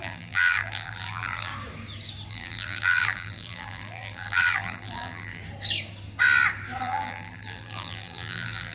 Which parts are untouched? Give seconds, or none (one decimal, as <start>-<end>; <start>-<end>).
1.5-2.3; 5.4-6.8

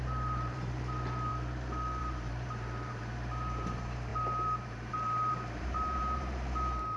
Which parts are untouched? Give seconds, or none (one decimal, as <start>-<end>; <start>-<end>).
1.3-2.0

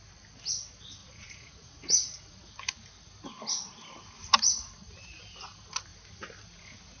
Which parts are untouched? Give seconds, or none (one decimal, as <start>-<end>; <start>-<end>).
0.0-1.0; 2.5-7.0

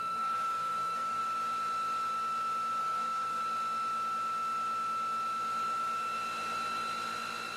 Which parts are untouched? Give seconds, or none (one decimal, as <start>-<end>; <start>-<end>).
1.2-2.8; 3.4-7.6

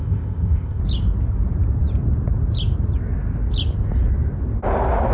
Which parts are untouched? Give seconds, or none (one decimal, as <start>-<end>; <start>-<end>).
0.8-5.1